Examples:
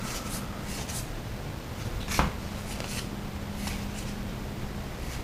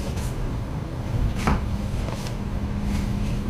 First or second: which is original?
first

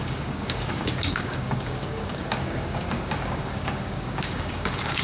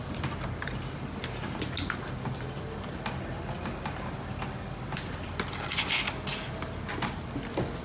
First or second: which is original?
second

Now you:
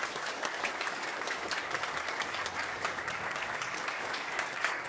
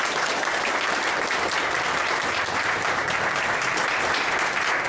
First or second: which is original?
second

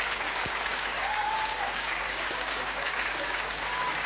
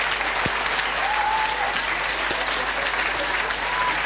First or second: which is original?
second